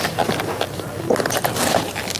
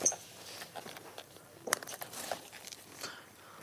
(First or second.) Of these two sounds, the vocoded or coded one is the second